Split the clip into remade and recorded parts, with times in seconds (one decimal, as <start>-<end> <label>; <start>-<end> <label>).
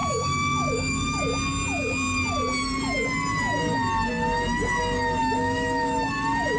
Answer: 0.0-1.2 remade; 1.2-5.2 recorded; 5.2-6.1 remade; 6.1-6.6 recorded